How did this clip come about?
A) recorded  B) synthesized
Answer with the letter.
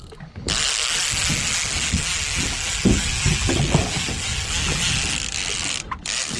A